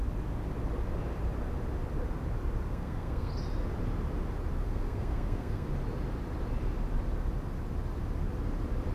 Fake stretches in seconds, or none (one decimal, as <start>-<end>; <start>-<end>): 2.7-3.3; 4.6-5.7